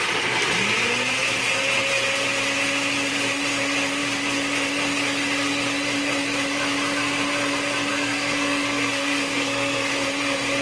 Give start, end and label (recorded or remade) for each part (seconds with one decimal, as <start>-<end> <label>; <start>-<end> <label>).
0.0-7.9 recorded; 7.9-9.9 remade; 9.9-10.6 recorded